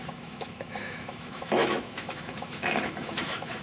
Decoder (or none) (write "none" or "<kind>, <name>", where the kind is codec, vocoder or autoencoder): autoencoder, DAC-VAE